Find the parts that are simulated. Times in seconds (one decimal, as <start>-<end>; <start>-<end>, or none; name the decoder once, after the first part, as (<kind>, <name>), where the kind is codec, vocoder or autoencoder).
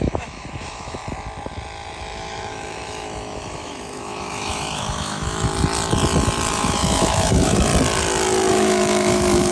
0.0-1.0 (autoencoder, DAC-VAE); 2.0-5.5; 6.5-7.7; 8.5-9.5